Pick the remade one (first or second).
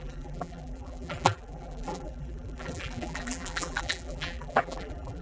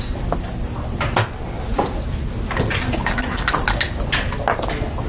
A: first